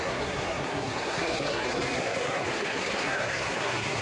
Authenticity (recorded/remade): remade